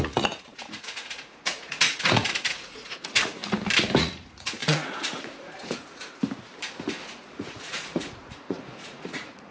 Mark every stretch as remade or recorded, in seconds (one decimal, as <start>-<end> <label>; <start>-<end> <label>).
0.0-3.4 remade; 3.4-4.0 recorded; 4.0-6.2 remade; 6.2-7.2 recorded; 7.2-9.5 remade